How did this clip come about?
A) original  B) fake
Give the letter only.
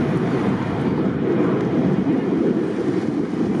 A